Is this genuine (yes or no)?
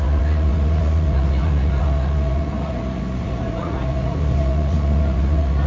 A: no